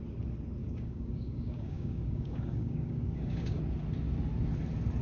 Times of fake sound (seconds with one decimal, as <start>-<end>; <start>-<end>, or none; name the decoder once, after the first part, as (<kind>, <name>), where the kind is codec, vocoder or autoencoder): 0.6-3.6 (codec, DAC)